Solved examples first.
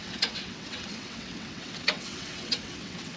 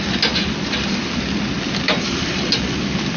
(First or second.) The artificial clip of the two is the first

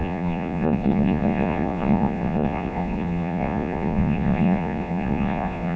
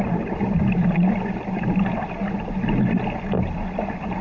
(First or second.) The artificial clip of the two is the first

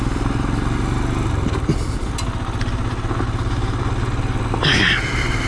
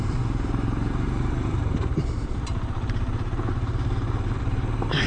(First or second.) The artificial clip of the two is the second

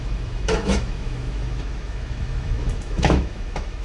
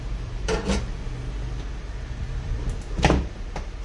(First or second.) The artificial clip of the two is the first